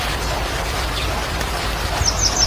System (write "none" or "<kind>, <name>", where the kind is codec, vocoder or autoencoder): vocoder, BigVGAN v2